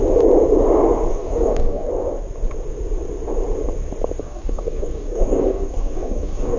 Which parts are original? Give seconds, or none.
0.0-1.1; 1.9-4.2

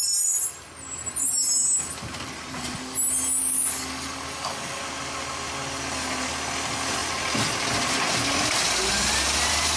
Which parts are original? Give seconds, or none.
0.0-3.4; 4.8-9.8

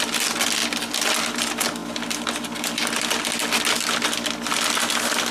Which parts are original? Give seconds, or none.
0.0-5.3

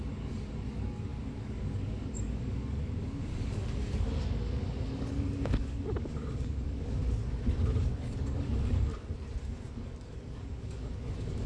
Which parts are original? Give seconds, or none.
7.0-7.8; 8.9-9.4

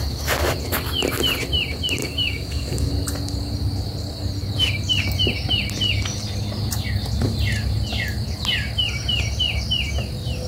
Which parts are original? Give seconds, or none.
0.0-2.0; 2.9-10.5

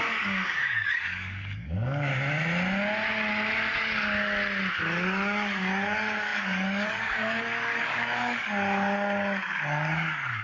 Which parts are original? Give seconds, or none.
2.1-4.7

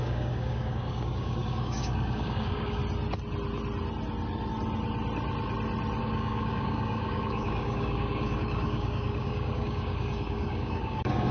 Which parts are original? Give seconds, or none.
2.8-6.0